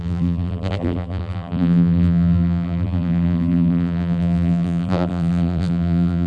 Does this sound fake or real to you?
fake